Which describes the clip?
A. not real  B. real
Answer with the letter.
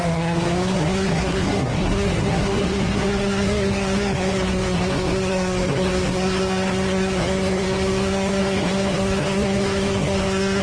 A